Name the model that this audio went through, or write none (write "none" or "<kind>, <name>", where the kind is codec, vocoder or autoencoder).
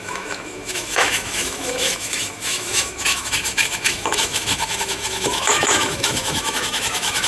autoencoder, DAC-VAE